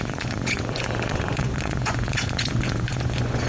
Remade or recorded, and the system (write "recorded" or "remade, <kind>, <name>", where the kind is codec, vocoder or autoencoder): remade, vocoder, Vocos